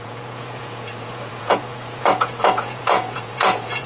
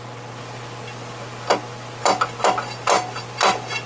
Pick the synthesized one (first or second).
first